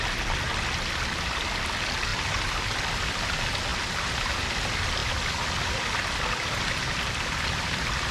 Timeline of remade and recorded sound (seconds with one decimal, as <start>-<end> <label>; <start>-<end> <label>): 0.0-8.1 recorded